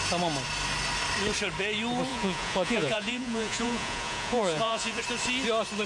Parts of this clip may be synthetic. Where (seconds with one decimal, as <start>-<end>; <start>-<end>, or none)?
2.1-5.0